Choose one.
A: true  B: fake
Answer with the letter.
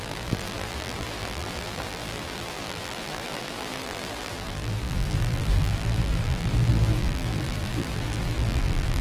B